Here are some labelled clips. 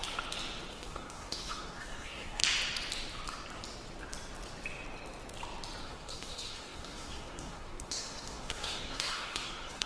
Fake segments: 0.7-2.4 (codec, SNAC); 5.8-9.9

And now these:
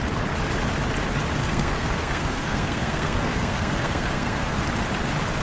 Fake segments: 1.4-4.6 (codec, SNAC)

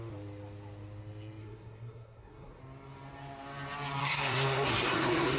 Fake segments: 1.4-2.6 (codec, SNAC); 4.0-5.4

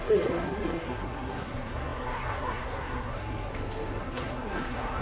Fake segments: 0.0-3.5 (codec, SNAC); 4.0-5.0

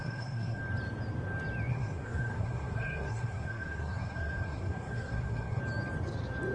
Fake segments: 0.0-0.6 (codec, SNAC); 1.7-5.6

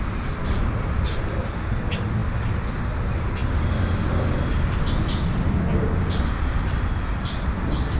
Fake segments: none